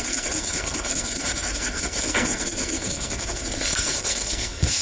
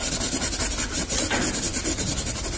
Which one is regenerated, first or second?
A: first